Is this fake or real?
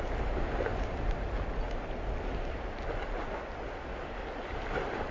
real